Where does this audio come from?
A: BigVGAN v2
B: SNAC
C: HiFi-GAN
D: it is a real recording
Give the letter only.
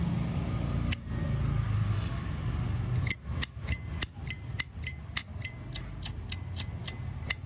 D